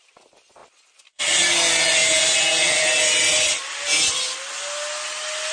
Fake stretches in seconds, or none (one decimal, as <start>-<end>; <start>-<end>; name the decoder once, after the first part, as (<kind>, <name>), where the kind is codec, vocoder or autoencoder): none